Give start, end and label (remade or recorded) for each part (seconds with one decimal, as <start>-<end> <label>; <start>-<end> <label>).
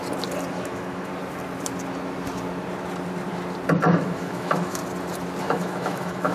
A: 0.0-0.5 recorded; 0.5-1.1 remade; 1.1-3.8 recorded; 3.8-4.8 remade; 4.8-5.4 recorded; 5.4-6.3 remade